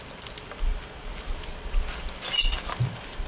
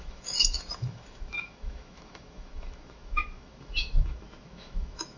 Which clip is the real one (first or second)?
first